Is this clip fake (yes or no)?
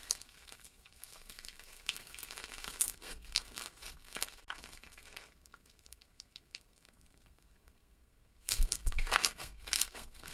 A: yes